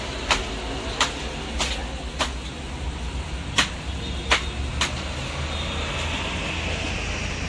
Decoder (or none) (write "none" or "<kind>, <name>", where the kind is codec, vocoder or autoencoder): none